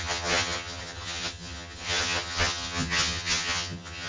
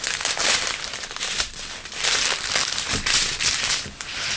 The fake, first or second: first